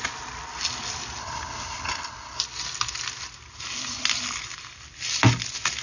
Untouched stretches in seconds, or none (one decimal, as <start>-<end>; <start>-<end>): 0.0-1.2; 2.4-5.8